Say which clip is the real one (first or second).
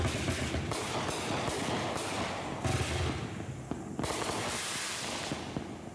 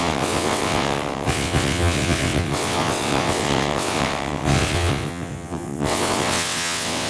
first